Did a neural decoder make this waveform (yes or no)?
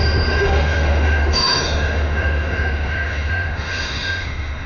yes